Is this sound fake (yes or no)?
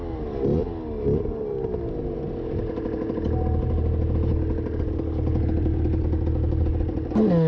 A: no